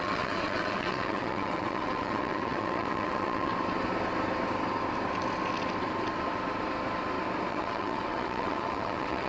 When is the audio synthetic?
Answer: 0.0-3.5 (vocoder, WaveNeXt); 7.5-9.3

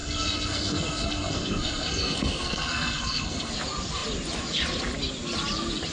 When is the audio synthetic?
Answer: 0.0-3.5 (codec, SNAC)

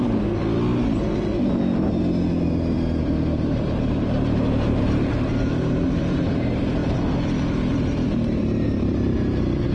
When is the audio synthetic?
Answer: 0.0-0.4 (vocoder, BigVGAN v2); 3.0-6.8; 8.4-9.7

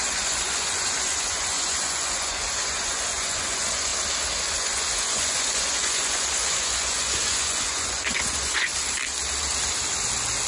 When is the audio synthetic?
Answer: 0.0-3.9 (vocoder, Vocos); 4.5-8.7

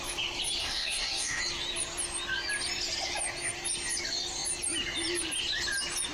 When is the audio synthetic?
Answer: 0.6-1.4 (codec, DAC)

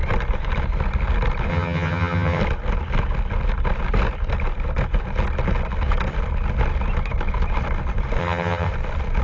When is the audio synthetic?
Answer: 1.5-2.4 (vocoder, HiFi-GAN); 8.2-8.7